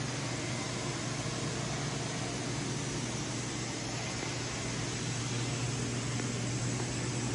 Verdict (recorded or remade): recorded